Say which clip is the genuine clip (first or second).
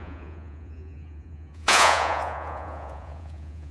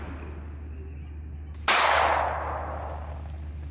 second